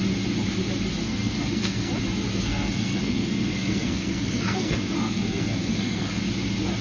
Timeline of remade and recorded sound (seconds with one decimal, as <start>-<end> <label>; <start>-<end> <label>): 0.0-1.0 recorded; 1.0-1.9 remade; 1.9-2.3 recorded; 2.3-6.2 remade; 6.2-6.8 recorded